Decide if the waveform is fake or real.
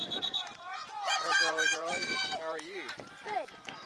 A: fake